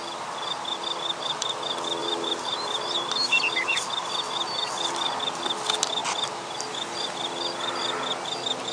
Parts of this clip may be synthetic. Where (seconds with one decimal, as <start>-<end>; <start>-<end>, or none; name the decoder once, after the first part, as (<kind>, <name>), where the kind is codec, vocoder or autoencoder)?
2.0-3.8 (vocoder, BigVGAN v2)